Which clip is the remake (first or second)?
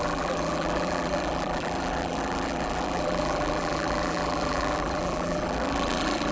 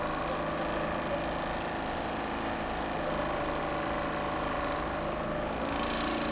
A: first